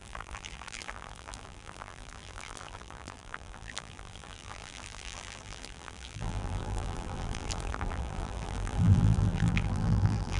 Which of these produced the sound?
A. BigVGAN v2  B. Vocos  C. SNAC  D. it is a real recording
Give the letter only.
A